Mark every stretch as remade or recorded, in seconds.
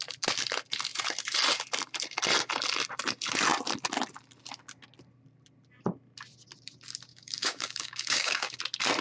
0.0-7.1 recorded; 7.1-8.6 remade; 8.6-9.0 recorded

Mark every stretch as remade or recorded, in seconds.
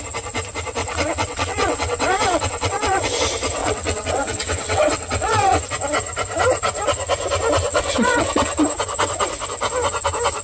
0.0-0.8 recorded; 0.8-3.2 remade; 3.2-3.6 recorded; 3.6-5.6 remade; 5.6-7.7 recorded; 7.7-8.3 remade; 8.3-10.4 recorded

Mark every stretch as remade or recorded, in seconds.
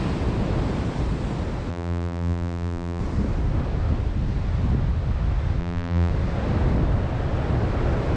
0.0-1.7 recorded; 1.7-3.0 remade; 3.0-5.6 recorded; 5.6-6.1 remade; 6.1-8.2 recorded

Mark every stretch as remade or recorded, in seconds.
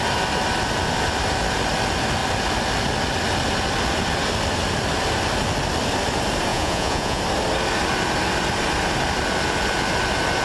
0.0-6.5 recorded; 6.5-7.2 remade; 7.2-10.4 recorded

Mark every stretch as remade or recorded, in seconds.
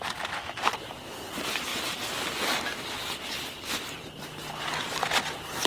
0.0-1.7 remade; 1.7-3.7 recorded; 3.7-5.7 remade